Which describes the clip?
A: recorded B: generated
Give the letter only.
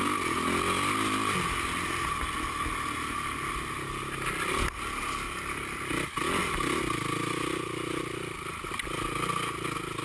A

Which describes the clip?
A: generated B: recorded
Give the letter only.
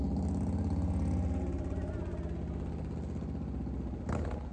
B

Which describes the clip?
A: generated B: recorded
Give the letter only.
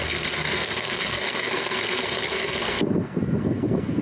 A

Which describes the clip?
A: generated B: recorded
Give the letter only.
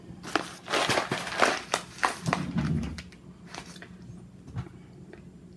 B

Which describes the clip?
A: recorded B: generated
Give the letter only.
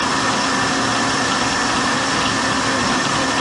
A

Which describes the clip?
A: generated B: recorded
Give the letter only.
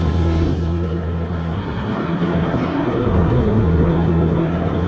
A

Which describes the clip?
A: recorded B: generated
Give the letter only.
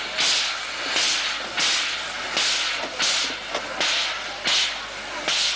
A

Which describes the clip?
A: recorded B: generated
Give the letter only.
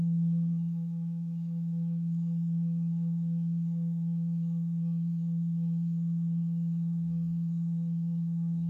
B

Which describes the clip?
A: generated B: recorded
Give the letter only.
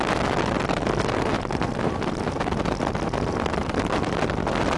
B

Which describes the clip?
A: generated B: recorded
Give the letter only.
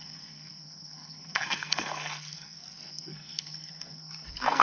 A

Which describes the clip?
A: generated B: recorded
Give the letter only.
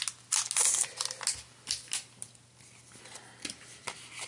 B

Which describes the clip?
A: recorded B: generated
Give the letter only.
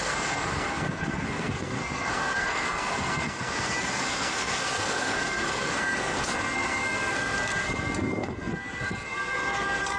B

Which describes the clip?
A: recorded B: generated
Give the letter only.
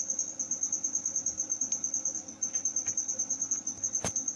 A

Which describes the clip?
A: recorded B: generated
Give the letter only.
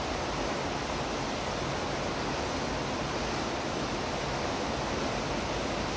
A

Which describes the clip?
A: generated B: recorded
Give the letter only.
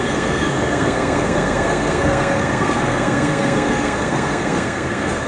A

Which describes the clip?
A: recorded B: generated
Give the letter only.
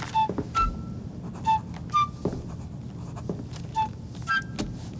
A